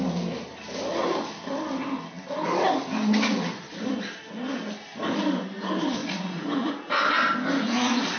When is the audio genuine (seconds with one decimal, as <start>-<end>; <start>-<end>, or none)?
0.0-6.0; 6.7-8.2